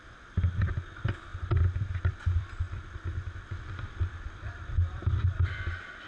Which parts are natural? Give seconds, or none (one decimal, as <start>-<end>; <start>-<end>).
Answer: none

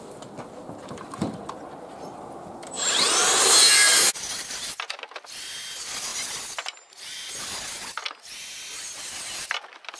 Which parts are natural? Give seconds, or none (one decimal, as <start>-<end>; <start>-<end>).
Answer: 0.0-10.0

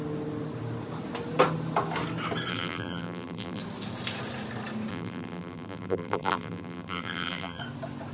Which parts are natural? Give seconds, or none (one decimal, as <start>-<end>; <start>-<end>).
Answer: 0.0-2.5; 3.6-4.9; 7.6-8.1

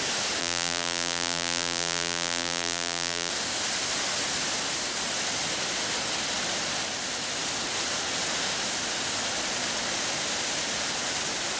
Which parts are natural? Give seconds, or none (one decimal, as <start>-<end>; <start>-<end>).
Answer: 0.0-0.4; 3.3-11.6